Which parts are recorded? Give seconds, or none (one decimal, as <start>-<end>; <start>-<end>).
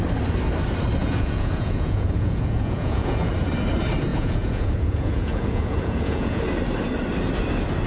0.0-1.0; 3.3-4.1; 6.4-7.9